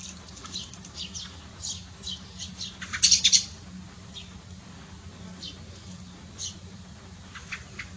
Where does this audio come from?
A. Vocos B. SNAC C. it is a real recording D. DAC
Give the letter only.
C